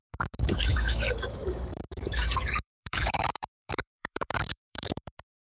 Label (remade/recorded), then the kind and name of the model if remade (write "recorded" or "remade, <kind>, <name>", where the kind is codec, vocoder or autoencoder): remade, autoencoder, DAC-VAE